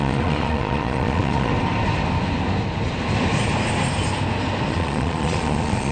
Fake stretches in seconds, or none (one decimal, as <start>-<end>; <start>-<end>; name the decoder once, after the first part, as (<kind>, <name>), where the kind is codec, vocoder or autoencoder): 0.0-1.5 (vocoder, Vocos); 4.7-5.9